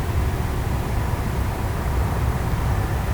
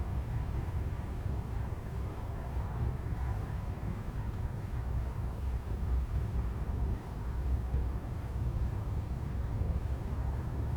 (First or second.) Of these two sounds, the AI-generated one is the second